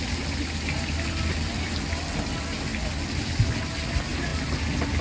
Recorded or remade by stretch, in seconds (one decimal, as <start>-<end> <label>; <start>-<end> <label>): 0.0-5.0 recorded